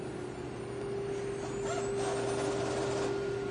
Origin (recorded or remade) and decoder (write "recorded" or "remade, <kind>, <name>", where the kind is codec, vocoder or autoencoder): recorded